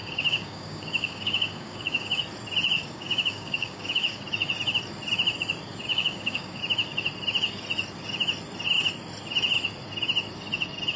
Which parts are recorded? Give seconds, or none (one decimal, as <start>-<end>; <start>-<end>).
2.2-2.8; 4.2-5.9; 6.6-11.0